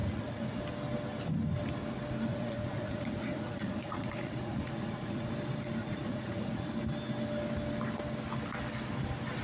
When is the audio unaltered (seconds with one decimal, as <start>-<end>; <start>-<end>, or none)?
0.6-2.3; 5.3-5.8; 6.7-9.4